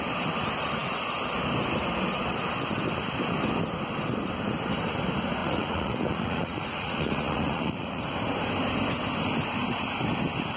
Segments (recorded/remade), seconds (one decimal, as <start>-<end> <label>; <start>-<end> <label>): 0.0-5.4 recorded; 5.4-8.0 remade; 8.0-10.6 recorded

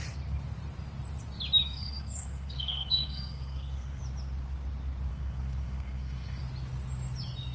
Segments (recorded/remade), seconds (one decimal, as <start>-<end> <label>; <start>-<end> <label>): 0.0-1.6 recorded; 1.6-4.0 remade; 4.0-5.1 recorded; 5.1-6.4 remade; 6.4-7.5 recorded

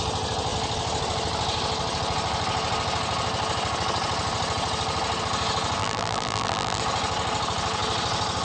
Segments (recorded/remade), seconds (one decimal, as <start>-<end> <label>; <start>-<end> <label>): 0.0-5.8 recorded; 5.8-6.8 remade; 6.8-8.4 recorded

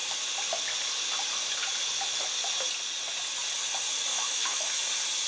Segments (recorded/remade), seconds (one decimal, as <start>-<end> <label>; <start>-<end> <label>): 0.0-4.1 recorded; 4.1-4.8 remade; 4.8-5.3 recorded